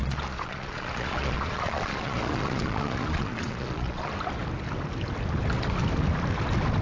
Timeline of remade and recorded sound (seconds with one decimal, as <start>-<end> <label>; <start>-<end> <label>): 0.0-4.1 remade; 4.1-6.8 recorded